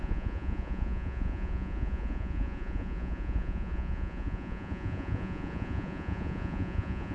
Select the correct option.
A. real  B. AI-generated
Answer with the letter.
B